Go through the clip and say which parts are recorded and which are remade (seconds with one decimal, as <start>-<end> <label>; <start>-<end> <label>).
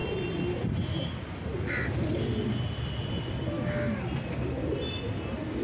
0.0-5.6 recorded